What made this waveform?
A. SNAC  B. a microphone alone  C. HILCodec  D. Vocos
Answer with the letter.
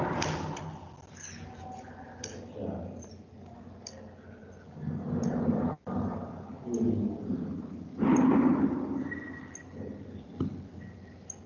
B